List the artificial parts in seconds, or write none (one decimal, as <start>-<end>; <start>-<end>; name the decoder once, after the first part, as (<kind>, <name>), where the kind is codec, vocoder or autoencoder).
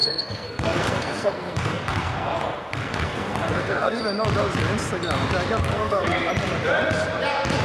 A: 0.0-4.0 (codec, SNAC); 5.7-6.3